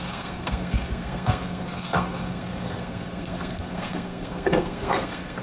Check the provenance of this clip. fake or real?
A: fake